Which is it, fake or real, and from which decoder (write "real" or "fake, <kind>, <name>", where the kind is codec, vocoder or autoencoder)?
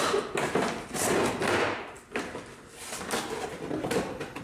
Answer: real